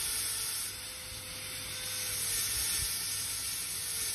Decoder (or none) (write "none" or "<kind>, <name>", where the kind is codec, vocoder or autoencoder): none